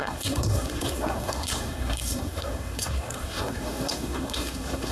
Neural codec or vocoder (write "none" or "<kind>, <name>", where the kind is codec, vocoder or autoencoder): codec, SNAC